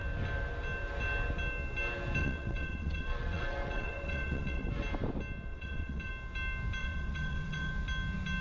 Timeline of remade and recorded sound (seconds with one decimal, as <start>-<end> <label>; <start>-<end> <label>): 0.0-2.2 recorded; 2.2-4.7 remade; 4.7-5.5 recorded; 5.5-6.1 remade; 6.1-6.8 recorded; 6.8-7.7 remade; 7.7-8.4 recorded